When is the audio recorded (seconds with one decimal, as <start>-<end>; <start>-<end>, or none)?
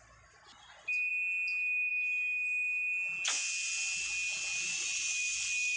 0.0-5.8